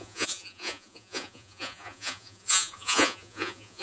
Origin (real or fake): fake